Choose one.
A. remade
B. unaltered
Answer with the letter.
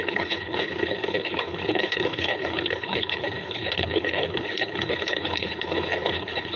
A